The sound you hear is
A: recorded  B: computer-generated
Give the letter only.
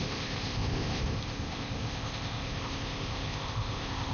B